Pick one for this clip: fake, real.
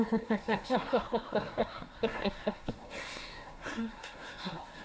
fake